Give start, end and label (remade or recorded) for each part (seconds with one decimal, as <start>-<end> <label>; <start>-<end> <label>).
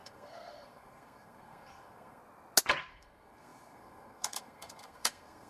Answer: 0.0-2.2 remade; 2.2-2.9 recorded; 2.9-5.5 remade